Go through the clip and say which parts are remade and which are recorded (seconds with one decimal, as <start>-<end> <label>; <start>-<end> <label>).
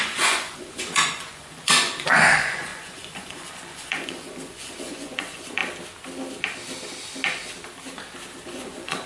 0.0-5.6 remade; 5.6-8.4 recorded; 8.4-9.1 remade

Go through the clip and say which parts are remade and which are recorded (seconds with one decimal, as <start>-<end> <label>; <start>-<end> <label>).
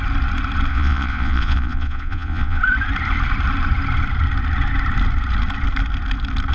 0.0-0.7 recorded; 0.7-2.6 remade; 2.6-6.5 recorded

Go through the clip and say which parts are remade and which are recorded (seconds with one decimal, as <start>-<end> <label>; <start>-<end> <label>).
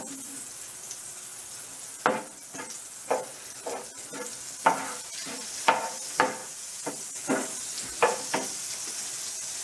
0.0-6.4 recorded; 6.4-6.9 remade; 6.9-9.6 recorded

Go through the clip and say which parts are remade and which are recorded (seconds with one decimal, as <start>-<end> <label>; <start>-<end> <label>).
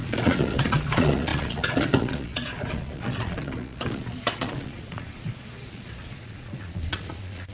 0.0-7.5 remade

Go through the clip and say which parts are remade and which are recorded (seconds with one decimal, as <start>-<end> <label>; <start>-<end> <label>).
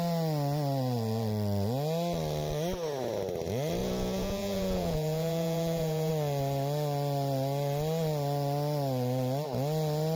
0.0-3.8 recorded; 3.8-6.1 remade; 6.1-10.2 recorded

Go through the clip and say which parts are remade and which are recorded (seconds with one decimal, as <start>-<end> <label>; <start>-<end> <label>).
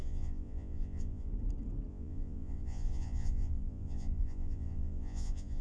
0.0-1.3 remade; 1.3-1.9 recorded; 1.9-5.6 remade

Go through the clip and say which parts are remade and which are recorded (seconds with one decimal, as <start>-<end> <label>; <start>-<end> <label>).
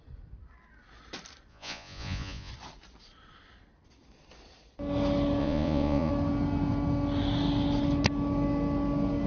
0.0-1.5 recorded; 1.5-2.5 remade; 2.5-5.4 recorded; 5.4-6.1 remade; 6.1-9.3 recorded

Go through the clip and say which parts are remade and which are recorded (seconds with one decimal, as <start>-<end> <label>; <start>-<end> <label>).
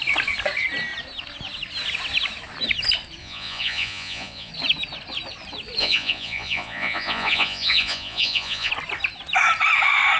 0.0-3.2 recorded; 3.2-4.5 remade; 4.5-5.8 recorded; 5.8-8.7 remade; 8.7-10.2 recorded